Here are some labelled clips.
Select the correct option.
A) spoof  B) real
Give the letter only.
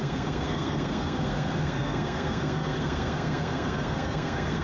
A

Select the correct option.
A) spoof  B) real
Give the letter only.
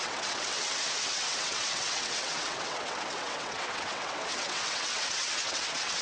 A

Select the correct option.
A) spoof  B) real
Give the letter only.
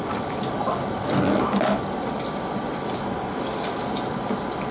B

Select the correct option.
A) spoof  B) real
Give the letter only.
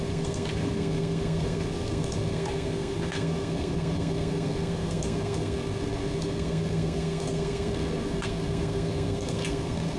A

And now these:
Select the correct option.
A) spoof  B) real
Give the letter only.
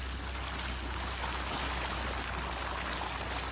B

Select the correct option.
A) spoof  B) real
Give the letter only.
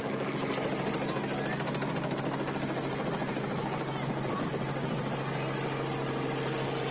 B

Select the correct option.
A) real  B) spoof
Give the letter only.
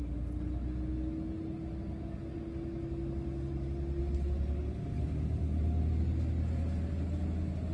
A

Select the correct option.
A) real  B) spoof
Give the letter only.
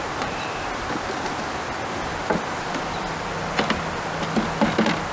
A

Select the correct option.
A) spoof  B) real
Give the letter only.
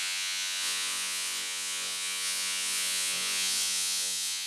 A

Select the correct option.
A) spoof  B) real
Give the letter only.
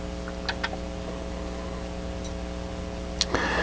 B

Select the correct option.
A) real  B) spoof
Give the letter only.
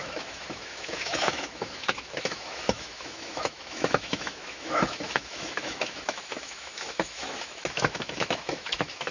B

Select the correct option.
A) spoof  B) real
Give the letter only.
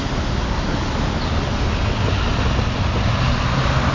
B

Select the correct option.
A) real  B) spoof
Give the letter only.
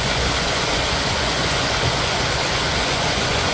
B